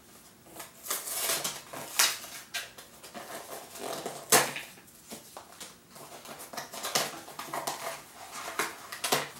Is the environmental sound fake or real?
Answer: real